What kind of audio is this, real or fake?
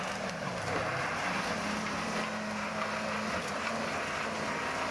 real